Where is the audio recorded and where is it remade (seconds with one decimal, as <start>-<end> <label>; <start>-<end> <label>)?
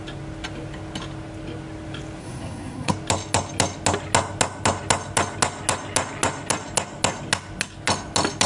0.0-2.2 recorded; 2.2-2.9 remade; 2.9-8.5 recorded